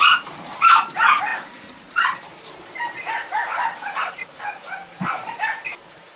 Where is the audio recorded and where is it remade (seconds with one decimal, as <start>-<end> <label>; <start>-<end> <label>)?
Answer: 0.0-6.2 remade